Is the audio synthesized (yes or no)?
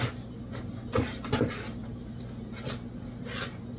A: no